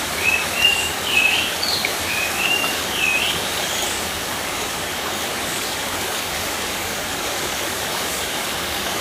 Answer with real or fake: fake